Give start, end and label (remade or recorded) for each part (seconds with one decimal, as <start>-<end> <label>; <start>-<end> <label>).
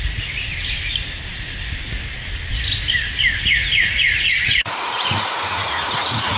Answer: 0.0-0.5 remade; 0.5-3.4 recorded; 3.4-6.4 remade